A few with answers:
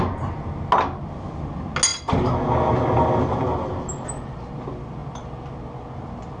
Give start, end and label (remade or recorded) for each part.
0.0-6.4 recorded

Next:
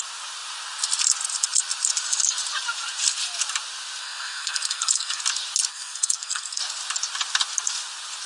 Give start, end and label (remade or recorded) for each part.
0.0-4.0 recorded; 4.0-5.2 remade; 5.2-5.7 recorded; 5.7-6.6 remade; 6.6-8.3 recorded

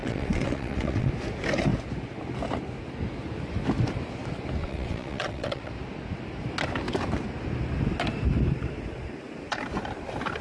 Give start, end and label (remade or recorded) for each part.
0.0-1.1 remade; 1.1-4.6 recorded; 4.6-5.7 remade; 5.7-10.4 recorded

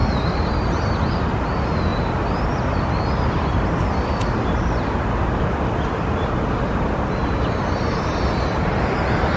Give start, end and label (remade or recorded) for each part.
0.0-9.4 recorded

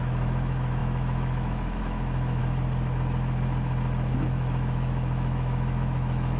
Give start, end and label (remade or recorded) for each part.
0.0-2.4 remade; 2.4-4.1 recorded; 4.1-6.4 remade

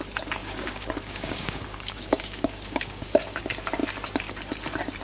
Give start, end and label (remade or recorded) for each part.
0.0-0.4 recorded; 0.4-3.4 remade; 3.4-5.0 recorded